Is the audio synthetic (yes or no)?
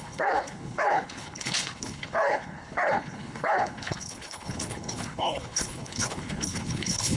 yes